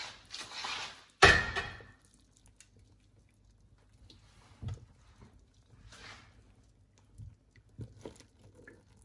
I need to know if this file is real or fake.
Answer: real